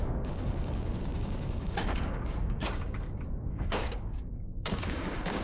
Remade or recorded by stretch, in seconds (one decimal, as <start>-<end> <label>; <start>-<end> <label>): 0.0-5.4 remade